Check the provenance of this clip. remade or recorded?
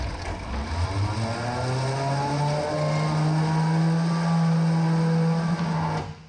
recorded